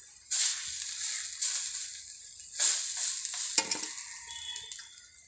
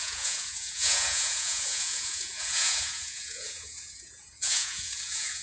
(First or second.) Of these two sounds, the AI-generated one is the second